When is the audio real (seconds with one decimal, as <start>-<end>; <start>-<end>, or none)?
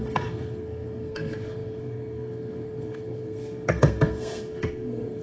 none